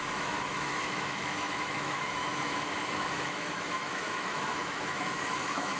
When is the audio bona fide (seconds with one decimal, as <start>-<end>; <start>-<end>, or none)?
none